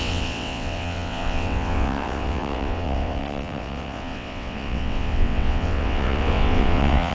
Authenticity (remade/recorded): remade